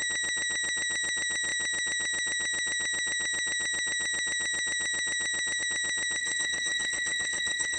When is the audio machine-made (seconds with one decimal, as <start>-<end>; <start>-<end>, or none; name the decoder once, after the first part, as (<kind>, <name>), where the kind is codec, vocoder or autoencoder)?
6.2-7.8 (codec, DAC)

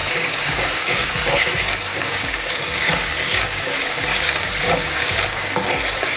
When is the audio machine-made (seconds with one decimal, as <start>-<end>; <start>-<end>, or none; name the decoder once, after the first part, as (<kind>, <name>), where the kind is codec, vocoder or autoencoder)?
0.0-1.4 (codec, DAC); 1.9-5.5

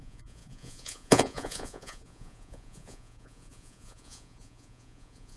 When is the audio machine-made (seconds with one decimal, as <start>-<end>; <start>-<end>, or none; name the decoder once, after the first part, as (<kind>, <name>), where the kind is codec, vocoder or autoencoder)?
0.0-5.4 (vocoder, Vocos)

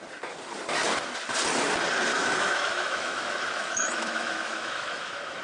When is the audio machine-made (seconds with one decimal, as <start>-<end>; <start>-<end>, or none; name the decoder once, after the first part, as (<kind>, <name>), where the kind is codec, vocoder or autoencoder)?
2.1-5.4 (autoencoder, DAC-VAE)

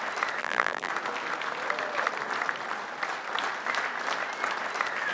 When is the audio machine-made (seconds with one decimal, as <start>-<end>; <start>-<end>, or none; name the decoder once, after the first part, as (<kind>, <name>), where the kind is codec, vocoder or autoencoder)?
0.4-0.9 (vocoder, BigVGAN v2)

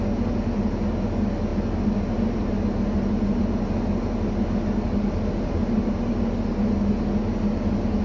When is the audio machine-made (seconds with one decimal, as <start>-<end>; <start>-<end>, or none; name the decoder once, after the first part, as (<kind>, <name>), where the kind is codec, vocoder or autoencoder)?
none

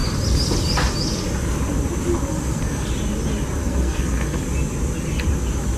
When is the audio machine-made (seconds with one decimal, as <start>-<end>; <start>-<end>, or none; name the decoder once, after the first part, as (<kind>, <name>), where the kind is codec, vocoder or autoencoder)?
2.3-2.9 (codec, SNAC); 3.6-4.4

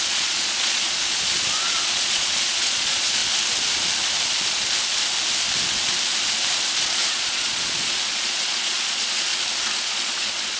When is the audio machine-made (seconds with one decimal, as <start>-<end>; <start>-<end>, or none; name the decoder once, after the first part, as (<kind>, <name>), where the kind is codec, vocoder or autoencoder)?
0.0-1.3 (vocoder, Vocos); 1.8-3.2; 6.8-9.3; 9.8-10.6